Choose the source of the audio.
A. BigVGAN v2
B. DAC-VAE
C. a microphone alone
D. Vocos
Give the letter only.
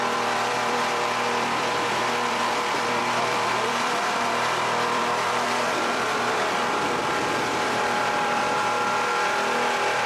A